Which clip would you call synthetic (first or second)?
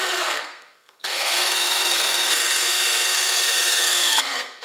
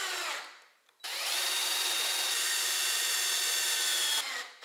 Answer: first